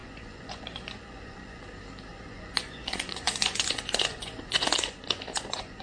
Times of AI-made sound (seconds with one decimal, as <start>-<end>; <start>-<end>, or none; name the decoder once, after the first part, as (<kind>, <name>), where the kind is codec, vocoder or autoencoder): 0.0-1.6 (vocoder, Vocos); 2.1-5.8